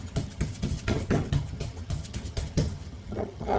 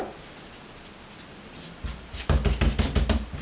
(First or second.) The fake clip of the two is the first